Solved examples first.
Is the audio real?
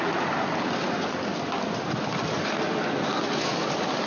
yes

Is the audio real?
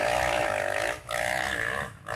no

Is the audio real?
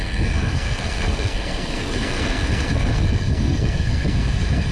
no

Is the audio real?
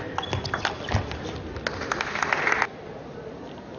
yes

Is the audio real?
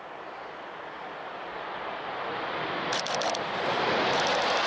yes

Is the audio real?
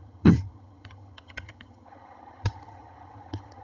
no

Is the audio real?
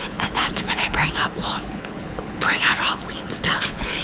no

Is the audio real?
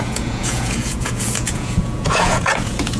no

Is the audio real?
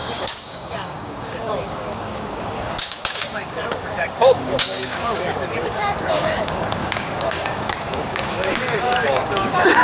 no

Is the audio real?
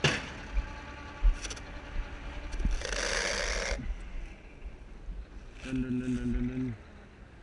yes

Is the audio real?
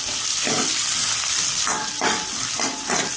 yes